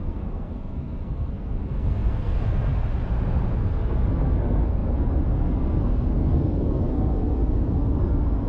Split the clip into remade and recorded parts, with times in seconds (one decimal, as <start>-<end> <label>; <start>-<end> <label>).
0.0-2.7 remade; 2.7-3.6 recorded; 3.6-8.5 remade